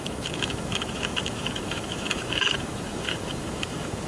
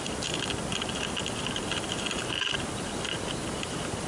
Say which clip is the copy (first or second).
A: first